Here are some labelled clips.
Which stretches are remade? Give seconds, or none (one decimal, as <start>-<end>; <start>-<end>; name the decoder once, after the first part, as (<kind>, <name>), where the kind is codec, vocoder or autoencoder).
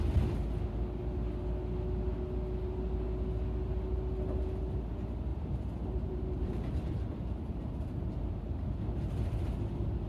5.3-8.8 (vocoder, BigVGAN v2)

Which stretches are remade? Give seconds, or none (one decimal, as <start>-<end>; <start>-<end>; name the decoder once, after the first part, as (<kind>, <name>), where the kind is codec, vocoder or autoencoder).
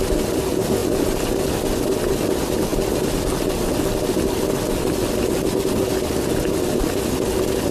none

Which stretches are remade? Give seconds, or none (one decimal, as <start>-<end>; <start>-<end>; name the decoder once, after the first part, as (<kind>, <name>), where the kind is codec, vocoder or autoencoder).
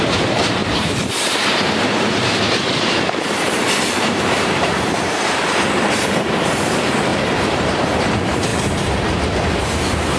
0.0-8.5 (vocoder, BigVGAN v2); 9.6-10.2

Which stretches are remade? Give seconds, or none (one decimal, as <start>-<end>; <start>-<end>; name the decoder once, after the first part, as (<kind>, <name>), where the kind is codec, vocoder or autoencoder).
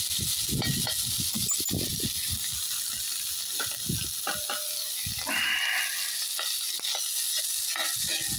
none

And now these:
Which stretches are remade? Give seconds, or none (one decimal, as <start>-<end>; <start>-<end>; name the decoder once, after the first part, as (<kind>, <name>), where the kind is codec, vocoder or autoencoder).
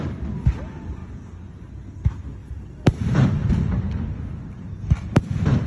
1.0-1.7 (vocoder, BigVGAN v2); 2.4-3.5